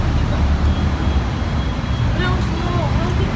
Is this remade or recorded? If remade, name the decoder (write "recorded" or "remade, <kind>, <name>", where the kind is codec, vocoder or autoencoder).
recorded